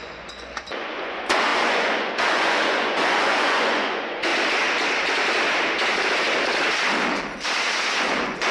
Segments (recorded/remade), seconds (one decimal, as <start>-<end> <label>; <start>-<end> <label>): 0.0-4.3 remade; 4.3-8.0 recorded; 8.0-8.5 remade